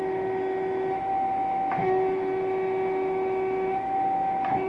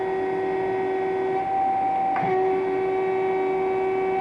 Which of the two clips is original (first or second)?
second